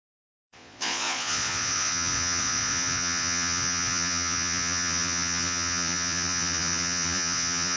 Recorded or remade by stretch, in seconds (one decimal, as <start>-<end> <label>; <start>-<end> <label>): 0.0-7.8 remade